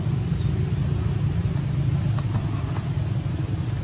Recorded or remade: recorded